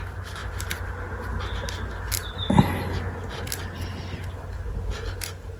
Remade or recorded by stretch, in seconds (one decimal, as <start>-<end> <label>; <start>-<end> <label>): 0.0-5.6 recorded